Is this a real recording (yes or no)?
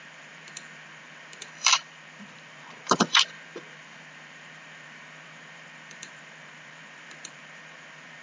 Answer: no